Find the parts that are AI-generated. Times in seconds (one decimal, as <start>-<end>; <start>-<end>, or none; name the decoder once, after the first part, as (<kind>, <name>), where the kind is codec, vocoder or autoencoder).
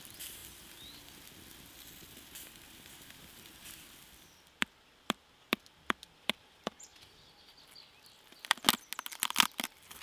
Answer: none